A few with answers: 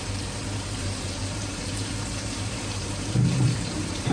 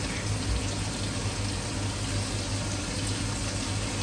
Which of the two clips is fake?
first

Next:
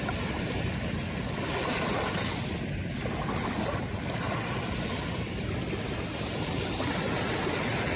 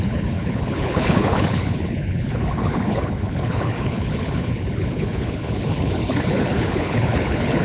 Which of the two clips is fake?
second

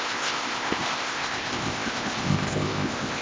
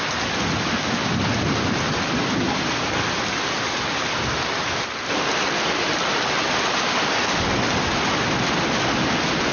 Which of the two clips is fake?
first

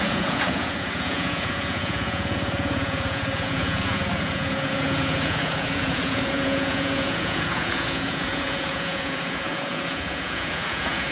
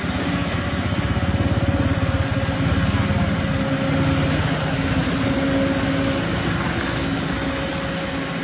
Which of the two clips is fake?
first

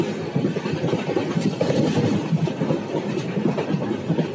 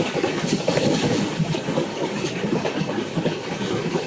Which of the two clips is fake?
second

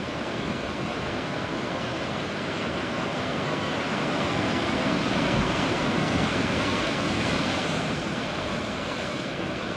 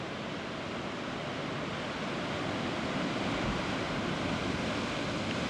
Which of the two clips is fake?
first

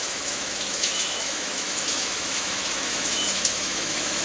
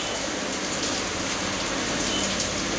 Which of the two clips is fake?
first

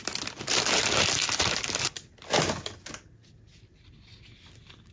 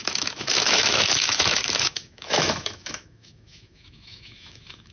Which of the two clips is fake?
second